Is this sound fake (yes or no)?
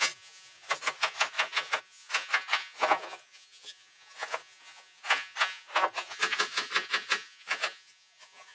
yes